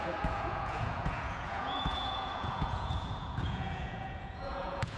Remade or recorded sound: remade